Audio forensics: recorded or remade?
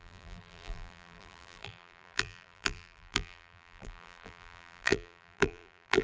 remade